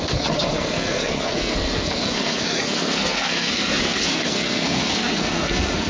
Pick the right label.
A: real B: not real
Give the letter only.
B